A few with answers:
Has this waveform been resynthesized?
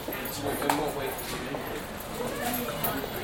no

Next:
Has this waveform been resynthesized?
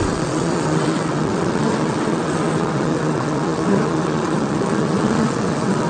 yes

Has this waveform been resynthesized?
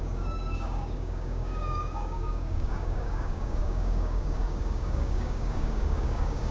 yes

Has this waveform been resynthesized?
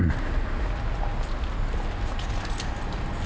no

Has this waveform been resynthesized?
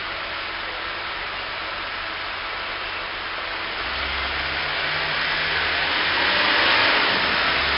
no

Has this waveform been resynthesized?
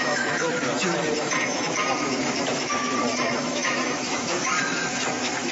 yes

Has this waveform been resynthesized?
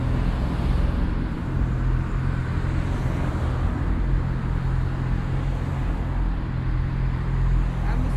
no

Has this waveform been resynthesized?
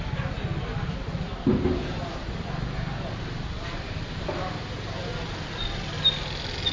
no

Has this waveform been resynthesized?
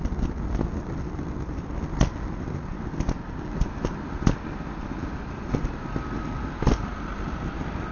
no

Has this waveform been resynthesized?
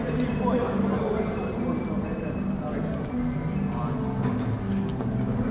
no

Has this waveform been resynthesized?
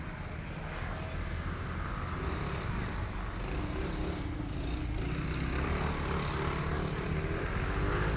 no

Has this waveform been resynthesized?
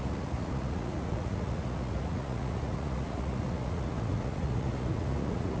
yes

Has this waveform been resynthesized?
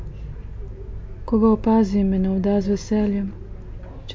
no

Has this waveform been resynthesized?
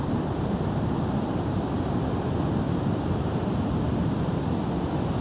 no